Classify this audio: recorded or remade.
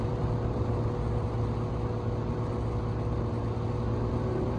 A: recorded